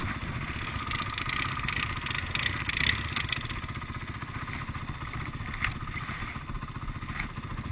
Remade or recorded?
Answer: recorded